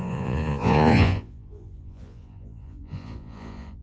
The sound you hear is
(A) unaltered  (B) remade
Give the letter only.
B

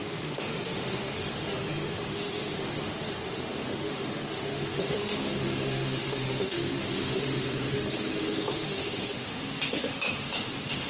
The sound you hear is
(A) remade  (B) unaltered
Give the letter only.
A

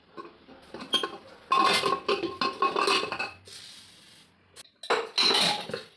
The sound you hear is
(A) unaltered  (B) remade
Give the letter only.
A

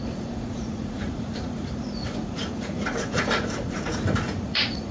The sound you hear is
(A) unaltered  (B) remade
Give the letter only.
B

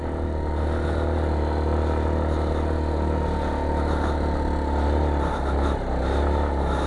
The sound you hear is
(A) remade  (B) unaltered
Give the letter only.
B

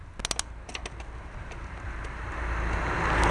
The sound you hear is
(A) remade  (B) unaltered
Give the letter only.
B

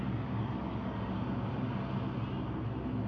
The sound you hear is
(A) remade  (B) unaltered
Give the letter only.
B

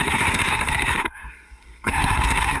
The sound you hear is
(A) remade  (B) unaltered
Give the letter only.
A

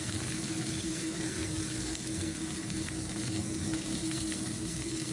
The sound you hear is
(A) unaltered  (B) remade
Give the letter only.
B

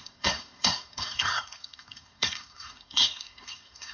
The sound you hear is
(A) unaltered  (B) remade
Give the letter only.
B